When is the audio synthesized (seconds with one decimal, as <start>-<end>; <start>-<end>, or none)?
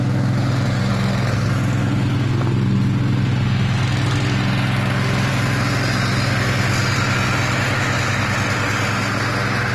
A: 0.9-1.5